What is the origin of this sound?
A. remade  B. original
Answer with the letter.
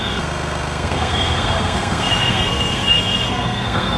A